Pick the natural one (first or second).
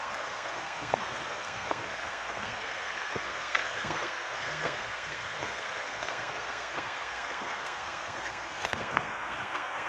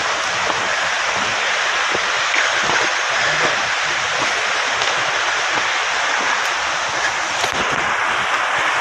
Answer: second